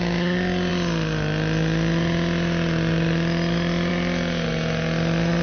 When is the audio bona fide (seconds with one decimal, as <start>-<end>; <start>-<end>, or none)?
0.0-5.4